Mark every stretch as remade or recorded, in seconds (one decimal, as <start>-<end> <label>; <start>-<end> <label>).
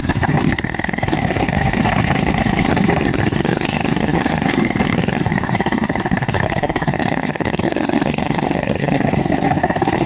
0.0-10.1 remade